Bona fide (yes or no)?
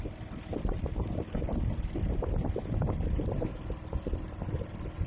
yes